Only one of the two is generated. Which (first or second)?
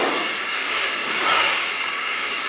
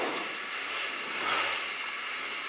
first